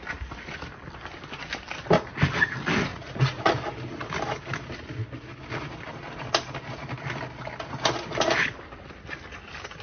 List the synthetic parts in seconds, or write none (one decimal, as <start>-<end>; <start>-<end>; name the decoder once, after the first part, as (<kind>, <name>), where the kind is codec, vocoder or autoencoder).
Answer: 2.9-3.5 (vocoder, Vocos)